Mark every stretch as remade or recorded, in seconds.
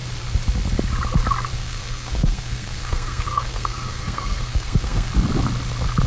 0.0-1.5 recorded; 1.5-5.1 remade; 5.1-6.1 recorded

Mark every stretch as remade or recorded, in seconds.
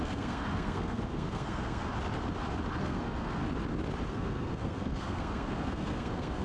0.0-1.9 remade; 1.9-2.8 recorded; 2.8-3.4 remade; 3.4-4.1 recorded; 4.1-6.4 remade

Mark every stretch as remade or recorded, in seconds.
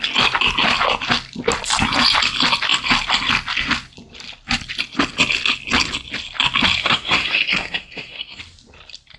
0.0-6.8 recorded; 6.8-8.4 remade; 8.4-9.2 recorded